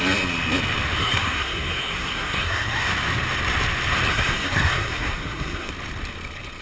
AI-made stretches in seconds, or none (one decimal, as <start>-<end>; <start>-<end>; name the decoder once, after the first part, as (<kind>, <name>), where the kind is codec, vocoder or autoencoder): 1.0-2.9 (codec, SNAC); 4.1-5.7